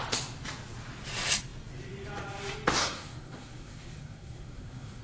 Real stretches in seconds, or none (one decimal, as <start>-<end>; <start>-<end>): 0.0-2.8